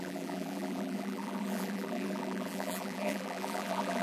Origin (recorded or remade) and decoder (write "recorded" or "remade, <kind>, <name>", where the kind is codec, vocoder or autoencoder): remade, vocoder, BigVGAN v2